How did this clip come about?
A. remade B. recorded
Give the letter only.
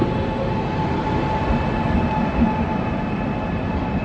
B